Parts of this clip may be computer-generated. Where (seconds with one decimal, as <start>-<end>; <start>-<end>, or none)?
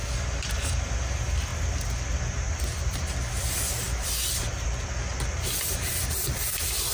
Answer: none